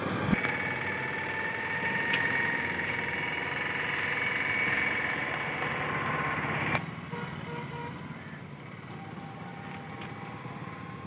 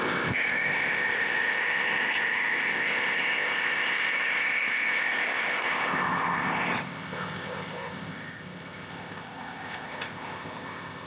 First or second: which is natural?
first